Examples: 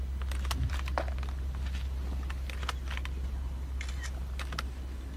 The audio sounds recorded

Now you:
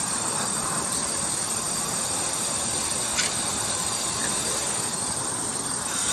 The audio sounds remade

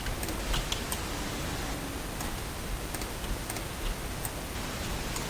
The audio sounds recorded